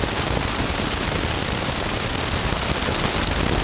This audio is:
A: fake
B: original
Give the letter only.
B